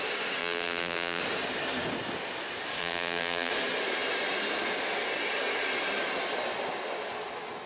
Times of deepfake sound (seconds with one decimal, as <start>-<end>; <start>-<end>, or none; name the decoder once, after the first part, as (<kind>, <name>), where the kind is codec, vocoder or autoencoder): 0.4-1.2 (vocoder, BigVGAN v2); 2.8-3.5